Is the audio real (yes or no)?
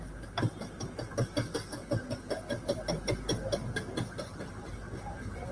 yes